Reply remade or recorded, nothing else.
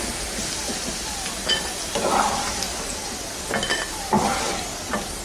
recorded